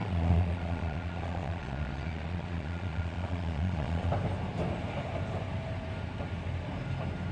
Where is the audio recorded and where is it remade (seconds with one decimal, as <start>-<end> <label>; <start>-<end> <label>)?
0.0-4.1 remade; 4.1-7.3 recorded